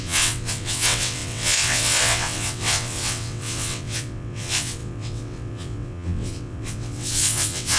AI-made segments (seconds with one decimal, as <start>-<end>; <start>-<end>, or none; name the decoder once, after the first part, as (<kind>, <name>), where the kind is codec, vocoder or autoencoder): 0.0-7.8 (vocoder, WaveNeXt)